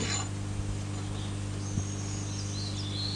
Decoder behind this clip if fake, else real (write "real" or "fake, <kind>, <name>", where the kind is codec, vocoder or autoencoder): real